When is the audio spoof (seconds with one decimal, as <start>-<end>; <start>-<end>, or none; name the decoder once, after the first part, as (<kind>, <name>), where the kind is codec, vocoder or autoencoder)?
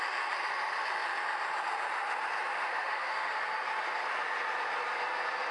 2.5-3.4 (autoencoder, DAC-VAE)